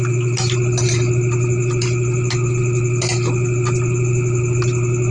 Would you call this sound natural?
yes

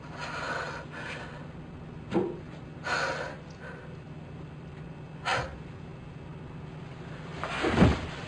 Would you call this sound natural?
yes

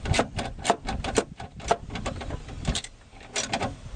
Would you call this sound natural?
yes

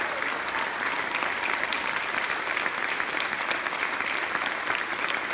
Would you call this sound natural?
yes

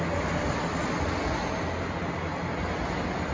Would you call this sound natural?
yes